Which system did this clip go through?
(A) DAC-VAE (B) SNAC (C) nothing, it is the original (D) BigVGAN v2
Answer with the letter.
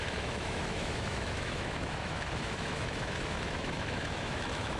A